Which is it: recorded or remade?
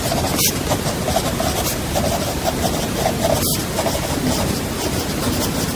recorded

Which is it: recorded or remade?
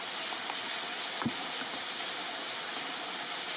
recorded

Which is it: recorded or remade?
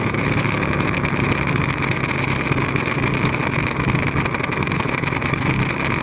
remade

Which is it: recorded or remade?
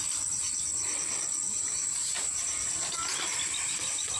recorded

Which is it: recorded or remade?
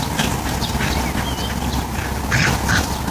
recorded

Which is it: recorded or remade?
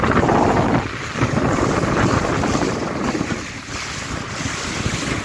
recorded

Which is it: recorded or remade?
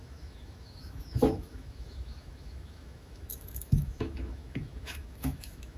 remade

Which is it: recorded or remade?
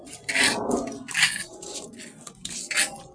recorded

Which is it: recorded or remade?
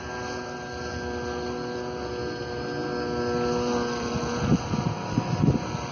recorded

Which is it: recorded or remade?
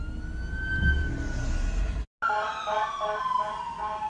recorded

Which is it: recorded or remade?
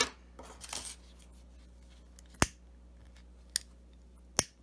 recorded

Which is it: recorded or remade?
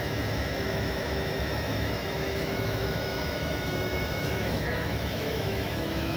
remade